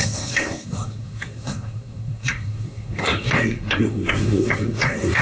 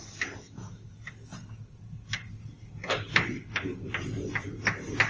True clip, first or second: second